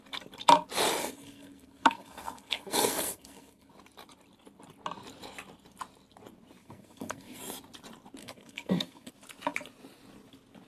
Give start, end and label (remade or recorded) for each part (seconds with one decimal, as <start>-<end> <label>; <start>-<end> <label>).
0.0-1.0 recorded; 1.0-3.7 remade; 3.7-6.6 recorded; 6.6-7.4 remade; 7.4-8.2 recorded; 8.2-9.1 remade; 9.1-10.7 recorded